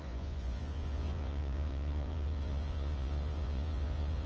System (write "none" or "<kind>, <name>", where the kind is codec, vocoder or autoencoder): vocoder, Vocos